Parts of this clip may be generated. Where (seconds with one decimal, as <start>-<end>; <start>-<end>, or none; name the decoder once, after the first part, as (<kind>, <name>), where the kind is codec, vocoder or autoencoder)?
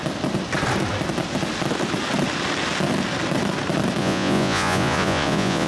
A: 4.0-5.7 (vocoder, Vocos)